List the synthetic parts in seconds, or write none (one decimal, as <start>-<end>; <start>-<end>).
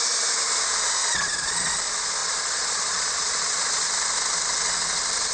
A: 1.0-1.8; 2.2-3.9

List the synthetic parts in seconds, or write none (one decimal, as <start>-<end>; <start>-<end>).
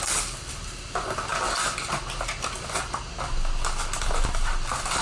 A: none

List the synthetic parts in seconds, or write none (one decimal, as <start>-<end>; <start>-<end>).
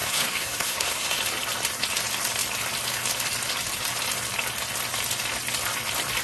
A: 0.0-1.2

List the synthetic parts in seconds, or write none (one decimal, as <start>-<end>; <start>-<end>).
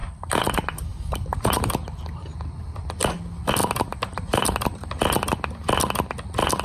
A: 0.0-0.5; 0.9-2.6; 3.6-4.9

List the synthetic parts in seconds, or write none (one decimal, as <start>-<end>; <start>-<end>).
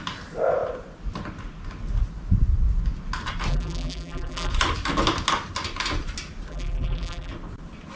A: 3.5-4.5; 6.5-7.3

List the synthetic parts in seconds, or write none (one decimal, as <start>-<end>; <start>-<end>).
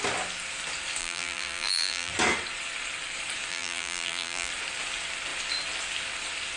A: 1.0-2.1; 3.5-4.5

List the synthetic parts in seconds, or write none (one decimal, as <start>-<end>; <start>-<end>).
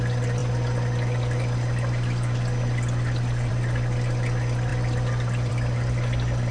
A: none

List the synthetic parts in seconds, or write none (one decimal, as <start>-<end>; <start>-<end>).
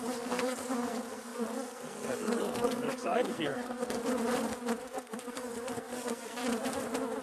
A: 0.0-4.0; 4.8-6.4